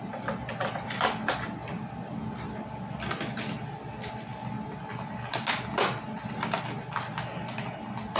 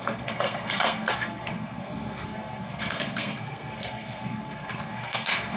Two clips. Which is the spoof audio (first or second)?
second